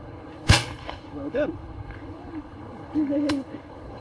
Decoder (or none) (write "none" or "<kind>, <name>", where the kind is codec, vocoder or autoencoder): codec, HILCodec